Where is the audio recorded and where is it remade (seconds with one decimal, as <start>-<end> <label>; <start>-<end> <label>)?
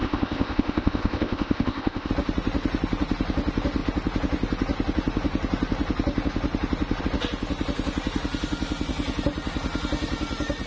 0.0-2.1 remade; 2.1-10.7 recorded